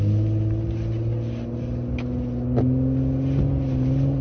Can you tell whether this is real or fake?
real